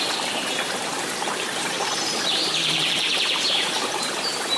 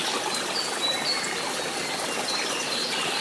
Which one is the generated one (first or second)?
first